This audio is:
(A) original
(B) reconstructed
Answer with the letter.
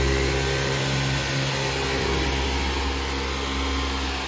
A